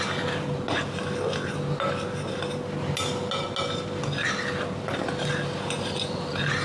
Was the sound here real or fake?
real